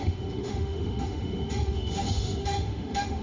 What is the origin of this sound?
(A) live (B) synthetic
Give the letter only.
B